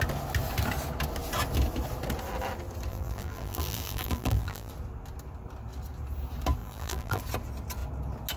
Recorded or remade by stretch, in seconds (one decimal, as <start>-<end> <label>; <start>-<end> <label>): 0.0-2.9 recorded; 2.9-4.7 remade; 4.7-6.6 recorded; 6.6-7.2 remade; 7.2-8.4 recorded

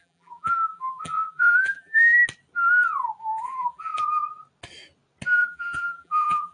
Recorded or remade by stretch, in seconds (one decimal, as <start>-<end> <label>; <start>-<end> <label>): 0.0-2.2 remade; 2.2-3.4 recorded; 3.4-3.9 remade; 3.9-5.4 recorded; 5.4-6.5 remade

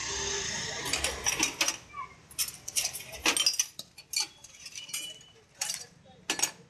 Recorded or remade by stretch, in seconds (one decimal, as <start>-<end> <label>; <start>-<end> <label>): 0.0-4.4 recorded; 4.4-6.2 remade; 6.2-6.7 recorded

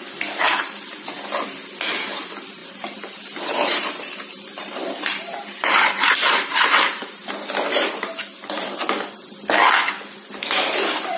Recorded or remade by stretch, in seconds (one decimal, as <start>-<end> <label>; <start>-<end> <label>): 0.0-2.6 recorded; 2.6-7.3 remade; 7.3-11.2 recorded

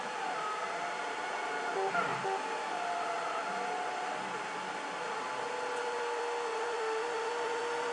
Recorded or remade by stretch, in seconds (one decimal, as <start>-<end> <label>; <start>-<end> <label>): 0.0-7.9 recorded